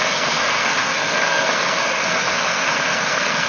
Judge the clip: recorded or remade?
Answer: remade